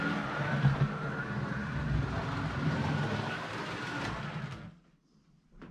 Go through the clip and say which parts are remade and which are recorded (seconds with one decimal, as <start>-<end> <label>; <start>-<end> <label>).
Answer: 0.0-5.7 recorded